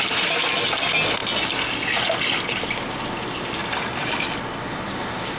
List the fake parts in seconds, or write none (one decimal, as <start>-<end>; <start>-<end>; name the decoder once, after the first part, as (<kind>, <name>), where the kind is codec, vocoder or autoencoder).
none